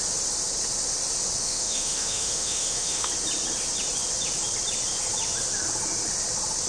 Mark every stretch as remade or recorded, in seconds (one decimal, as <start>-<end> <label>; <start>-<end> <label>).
0.0-1.4 recorded; 1.4-3.1 remade; 3.1-6.7 recorded